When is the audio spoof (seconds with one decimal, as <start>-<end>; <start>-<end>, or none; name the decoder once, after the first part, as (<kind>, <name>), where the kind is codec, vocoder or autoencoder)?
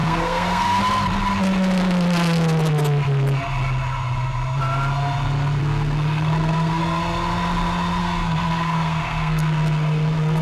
0.0-0.8 (codec, SNAC); 5.6-6.8; 8.0-10.4